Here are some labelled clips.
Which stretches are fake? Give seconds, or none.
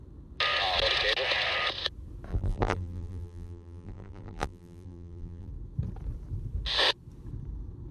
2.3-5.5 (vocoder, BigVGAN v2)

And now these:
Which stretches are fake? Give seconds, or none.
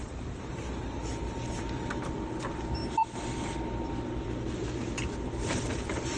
0.0-2.8 (vocoder, BigVGAN v2); 5.1-6.2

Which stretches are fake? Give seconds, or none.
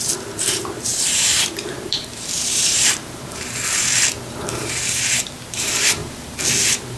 0.0-6.0 (vocoder, BigVGAN v2); 6.6-7.0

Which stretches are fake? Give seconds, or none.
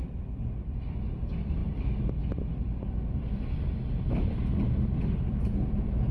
none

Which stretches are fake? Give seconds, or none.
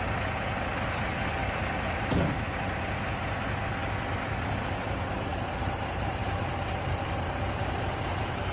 1.4-2.8 (vocoder, BigVGAN v2); 5.3-7.9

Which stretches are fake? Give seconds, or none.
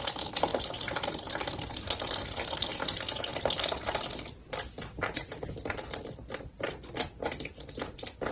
0.5-1.4 (vocoder, BigVGAN v2); 3.3-8.3